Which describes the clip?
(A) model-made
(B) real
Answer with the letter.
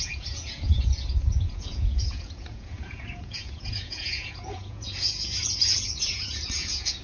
A